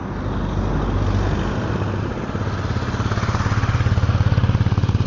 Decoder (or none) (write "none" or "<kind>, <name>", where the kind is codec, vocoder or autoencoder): none